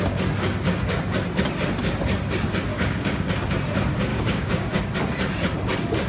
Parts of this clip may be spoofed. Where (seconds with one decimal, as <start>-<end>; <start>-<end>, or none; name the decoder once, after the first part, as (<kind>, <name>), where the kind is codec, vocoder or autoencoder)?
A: 2.7-3.3 (codec, DAC); 4.1-4.8